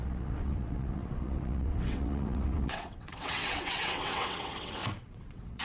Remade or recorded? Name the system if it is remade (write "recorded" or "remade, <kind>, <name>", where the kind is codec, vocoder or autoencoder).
remade, vocoder, WaveNeXt